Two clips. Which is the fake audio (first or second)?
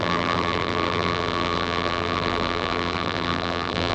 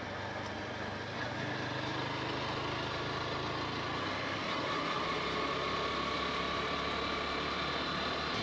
first